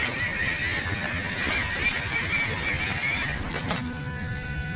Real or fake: real